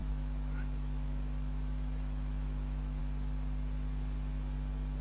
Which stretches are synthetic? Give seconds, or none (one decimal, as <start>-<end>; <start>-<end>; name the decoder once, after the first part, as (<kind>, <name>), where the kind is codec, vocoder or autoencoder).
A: 0.0-3.0 (autoencoder, DAC-VAE)